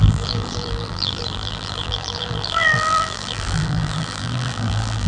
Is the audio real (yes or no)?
no